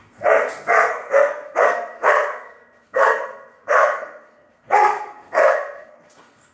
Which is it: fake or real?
fake